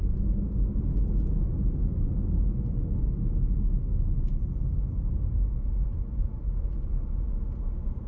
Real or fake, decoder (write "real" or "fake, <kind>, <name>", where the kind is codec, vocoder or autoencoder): real